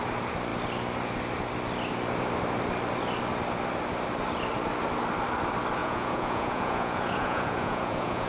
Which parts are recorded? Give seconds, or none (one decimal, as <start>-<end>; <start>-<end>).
0.0-5.8